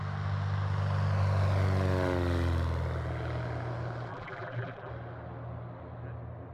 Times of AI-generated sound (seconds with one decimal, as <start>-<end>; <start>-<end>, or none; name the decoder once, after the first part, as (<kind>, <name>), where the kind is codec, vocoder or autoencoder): 4.1-4.9 (vocoder, BigVGAN v2)